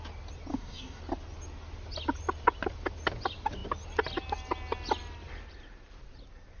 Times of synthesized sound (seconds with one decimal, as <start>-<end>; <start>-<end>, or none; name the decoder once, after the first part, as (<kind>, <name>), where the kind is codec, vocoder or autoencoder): 0.5-1.0 (codec, DAC)